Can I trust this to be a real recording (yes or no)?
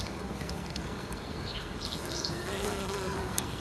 no